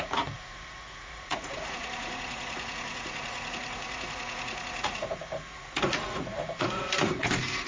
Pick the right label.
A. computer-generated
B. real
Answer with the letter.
A